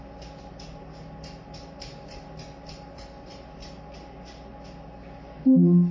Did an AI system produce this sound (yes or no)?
no